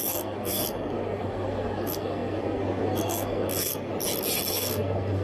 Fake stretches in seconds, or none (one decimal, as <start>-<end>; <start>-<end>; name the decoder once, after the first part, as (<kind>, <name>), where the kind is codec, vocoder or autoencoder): 0.0-3.9 (codec, SNAC); 4.5-5.2